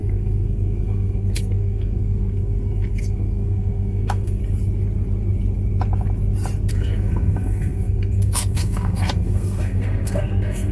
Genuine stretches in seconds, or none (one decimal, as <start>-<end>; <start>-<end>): 4.4-6.7